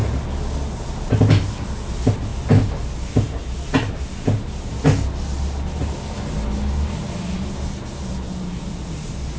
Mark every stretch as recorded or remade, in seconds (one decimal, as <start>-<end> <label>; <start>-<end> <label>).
0.0-9.4 recorded